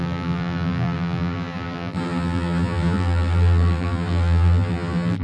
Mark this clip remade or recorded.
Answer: remade